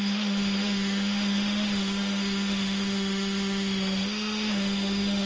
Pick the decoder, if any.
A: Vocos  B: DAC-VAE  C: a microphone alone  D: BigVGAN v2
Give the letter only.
B